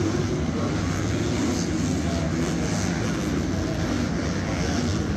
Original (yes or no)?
yes